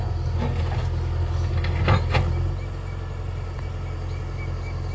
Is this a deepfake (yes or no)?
no